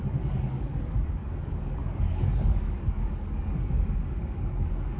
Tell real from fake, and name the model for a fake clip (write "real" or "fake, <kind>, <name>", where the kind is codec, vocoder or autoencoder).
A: fake, codec, DAC